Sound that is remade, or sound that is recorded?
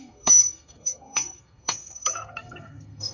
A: remade